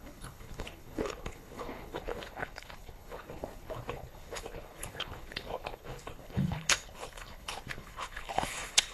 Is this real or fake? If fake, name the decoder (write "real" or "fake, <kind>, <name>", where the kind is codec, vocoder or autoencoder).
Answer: fake, codec, HILCodec